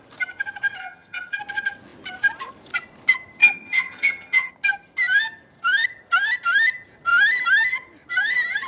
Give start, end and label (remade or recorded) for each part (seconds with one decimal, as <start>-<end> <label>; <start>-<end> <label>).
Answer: 0.0-0.8 recorded; 0.8-1.4 remade; 1.4-3.4 recorded; 3.4-4.5 remade; 4.5-8.7 recorded